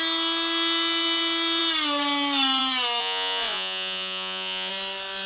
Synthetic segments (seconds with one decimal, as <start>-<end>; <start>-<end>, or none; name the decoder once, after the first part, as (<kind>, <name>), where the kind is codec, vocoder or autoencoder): 3.0-4.7 (vocoder, Vocos)